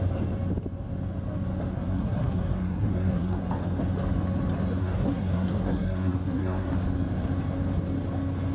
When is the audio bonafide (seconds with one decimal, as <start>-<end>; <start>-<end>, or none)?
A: 0.0-1.7; 3.5-4.8; 6.7-8.5